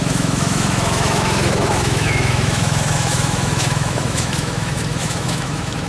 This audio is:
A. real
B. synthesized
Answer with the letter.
B